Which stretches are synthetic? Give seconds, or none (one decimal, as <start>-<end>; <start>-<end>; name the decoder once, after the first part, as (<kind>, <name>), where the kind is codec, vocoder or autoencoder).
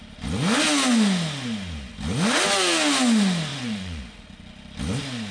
3.5-4.0 (vocoder, Vocos)